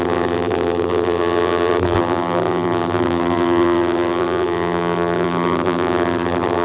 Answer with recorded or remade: remade